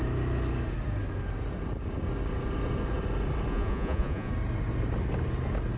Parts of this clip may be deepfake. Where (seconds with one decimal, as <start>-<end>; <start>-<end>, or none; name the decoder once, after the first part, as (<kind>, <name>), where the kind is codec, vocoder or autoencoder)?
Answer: 3.5-4.3 (vocoder, Vocos)